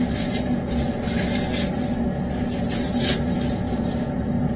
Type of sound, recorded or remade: recorded